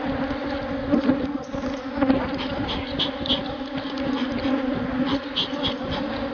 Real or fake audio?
real